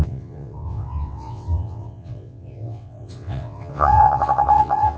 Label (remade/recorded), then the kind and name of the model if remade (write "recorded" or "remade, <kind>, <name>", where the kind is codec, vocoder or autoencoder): remade, vocoder, WaveNeXt